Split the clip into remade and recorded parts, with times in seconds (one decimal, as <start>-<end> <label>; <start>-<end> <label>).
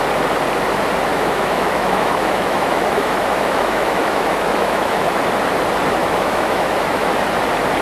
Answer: 0.0-1.1 recorded; 1.1-5.1 remade; 5.1-6.0 recorded; 6.0-7.1 remade; 7.1-7.8 recorded